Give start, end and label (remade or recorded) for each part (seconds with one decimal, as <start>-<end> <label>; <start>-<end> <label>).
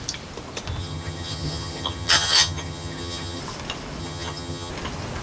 0.0-0.8 recorded; 0.8-3.4 remade; 3.4-4.0 recorded; 4.0-4.7 remade; 4.7-5.2 recorded